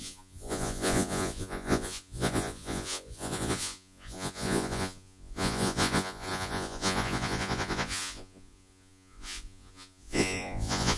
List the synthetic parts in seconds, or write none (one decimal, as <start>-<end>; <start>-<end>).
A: 0.0-11.0